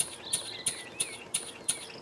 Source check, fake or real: real